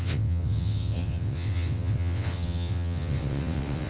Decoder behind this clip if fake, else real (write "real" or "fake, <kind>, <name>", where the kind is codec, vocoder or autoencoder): fake, vocoder, WaveNeXt